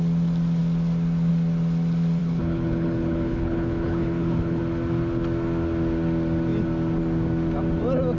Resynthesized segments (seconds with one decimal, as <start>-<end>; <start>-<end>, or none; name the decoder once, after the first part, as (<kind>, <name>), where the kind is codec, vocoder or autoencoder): 2.2-4.6 (codec, HILCodec)